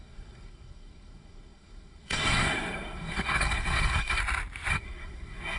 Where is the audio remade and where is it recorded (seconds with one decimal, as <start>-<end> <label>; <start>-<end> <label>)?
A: 0.0-4.2 remade; 4.2-4.7 recorded; 4.7-5.6 remade

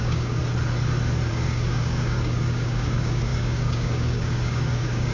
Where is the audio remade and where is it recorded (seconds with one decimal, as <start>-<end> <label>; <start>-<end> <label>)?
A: 0.0-0.4 remade; 0.4-1.3 recorded; 1.3-5.1 remade

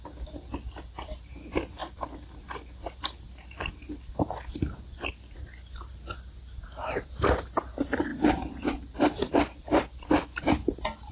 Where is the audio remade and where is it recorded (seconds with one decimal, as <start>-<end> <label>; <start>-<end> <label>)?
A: 0.0-11.1 recorded

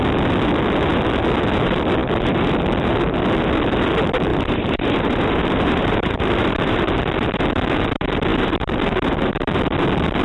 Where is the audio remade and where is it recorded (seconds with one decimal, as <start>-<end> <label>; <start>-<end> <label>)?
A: 0.0-4.3 recorded; 4.3-6.8 remade; 6.8-8.3 recorded; 8.3-9.3 remade; 9.3-10.2 recorded

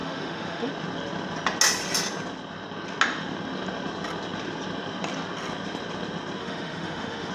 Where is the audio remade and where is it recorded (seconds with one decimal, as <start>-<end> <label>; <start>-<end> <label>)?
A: 0.0-0.7 remade; 0.7-6.4 recorded; 6.4-7.3 remade

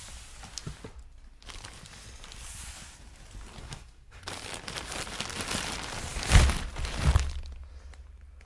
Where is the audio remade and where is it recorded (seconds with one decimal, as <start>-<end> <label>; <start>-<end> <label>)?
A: 0.0-3.6 recorded; 3.6-4.2 remade; 4.2-8.5 recorded

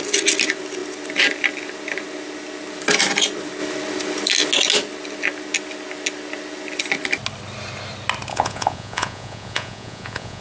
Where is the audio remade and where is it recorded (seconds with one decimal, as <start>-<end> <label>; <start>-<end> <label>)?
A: 0.0-8.3 recorded; 8.3-10.4 remade

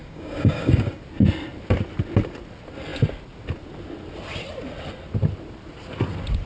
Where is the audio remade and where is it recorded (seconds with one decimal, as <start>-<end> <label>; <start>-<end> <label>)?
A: 0.0-1.0 remade; 1.0-6.5 recorded